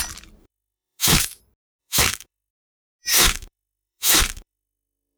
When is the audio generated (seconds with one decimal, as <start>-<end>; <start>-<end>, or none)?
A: 0.4-1.4; 1.8-2.5; 3.1-5.2